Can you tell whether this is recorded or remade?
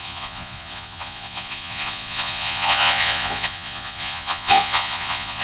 remade